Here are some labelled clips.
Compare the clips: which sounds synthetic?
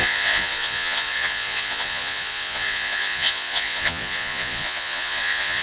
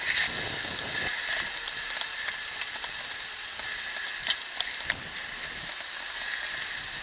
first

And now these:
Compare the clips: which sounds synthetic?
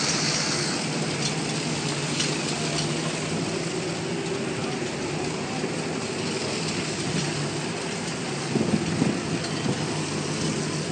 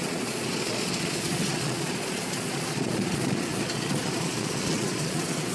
second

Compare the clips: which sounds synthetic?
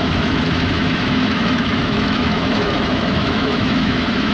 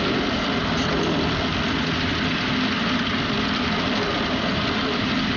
first